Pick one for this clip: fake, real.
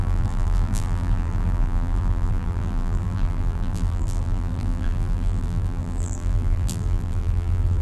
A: fake